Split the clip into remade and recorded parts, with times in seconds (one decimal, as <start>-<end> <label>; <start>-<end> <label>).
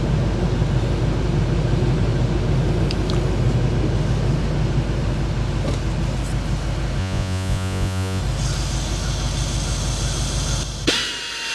0.0-7.0 recorded; 7.0-8.2 remade; 8.2-11.5 recorded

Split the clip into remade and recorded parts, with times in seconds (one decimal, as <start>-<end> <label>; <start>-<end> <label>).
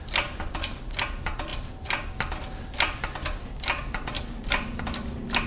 0.0-5.5 recorded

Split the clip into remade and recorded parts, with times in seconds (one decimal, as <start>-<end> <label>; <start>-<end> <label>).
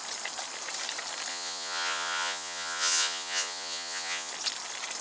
0.0-1.3 recorded; 1.3-4.3 remade; 4.3-5.0 recorded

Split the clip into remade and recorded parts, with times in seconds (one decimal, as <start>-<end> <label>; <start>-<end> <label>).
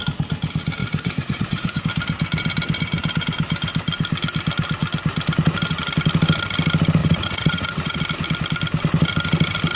0.0-0.8 recorded; 0.8-1.8 remade; 1.8-7.0 recorded; 7.0-8.0 remade; 8.0-9.8 recorded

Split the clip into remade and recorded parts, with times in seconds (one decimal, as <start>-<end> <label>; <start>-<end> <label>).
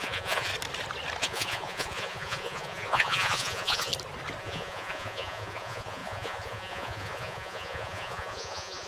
0.0-0.5 remade; 0.5-1.2 recorded; 1.2-3.9 remade; 3.9-4.4 recorded; 4.4-8.9 remade